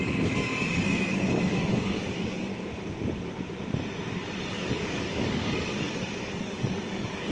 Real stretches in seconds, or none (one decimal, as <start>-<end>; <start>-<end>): 2.5-4.4